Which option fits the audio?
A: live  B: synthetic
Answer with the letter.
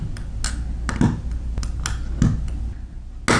A